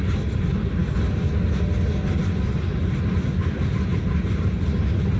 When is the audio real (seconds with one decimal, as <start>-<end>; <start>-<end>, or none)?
0.0-5.2